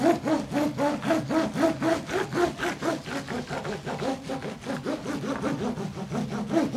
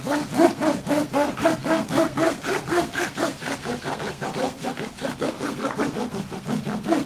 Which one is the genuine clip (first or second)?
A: first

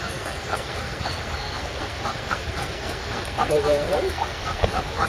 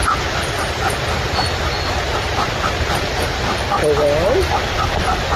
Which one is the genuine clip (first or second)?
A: second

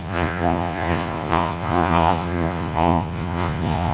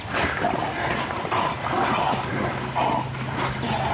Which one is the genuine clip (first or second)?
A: second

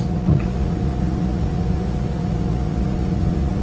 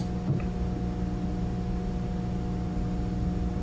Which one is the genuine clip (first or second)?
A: second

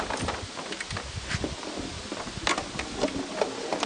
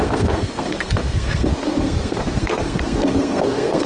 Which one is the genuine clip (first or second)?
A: first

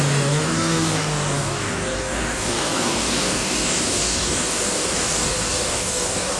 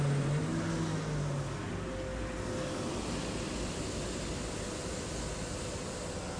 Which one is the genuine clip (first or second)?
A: second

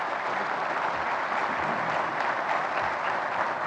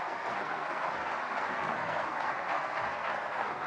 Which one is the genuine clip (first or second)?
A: first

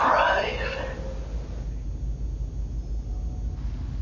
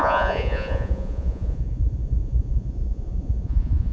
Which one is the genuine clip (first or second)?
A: first